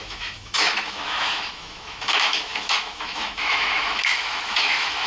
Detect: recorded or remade remade